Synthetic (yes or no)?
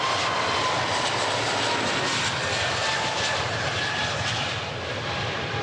no